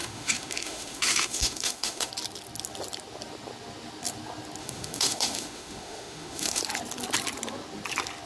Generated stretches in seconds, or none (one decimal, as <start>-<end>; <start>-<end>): 0.0-2.1; 4.6-6.6